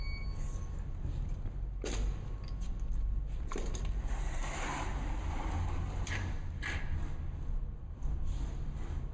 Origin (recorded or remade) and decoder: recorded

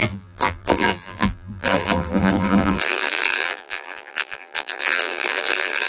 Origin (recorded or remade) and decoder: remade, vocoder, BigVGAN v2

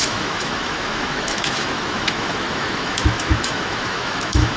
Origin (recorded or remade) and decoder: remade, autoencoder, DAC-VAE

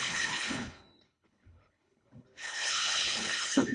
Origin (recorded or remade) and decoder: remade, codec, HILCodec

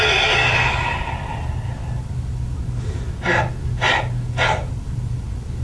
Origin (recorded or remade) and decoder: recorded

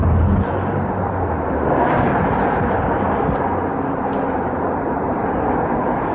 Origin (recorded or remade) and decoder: recorded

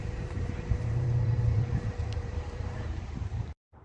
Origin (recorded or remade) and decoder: remade, vocoder, BigVGAN v2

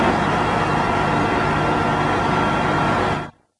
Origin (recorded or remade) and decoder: recorded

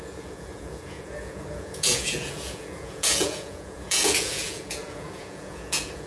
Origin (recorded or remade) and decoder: remade, vocoder, Vocos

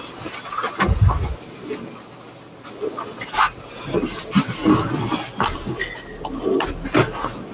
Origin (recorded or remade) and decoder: recorded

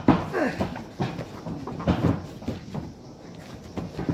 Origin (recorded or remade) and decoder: recorded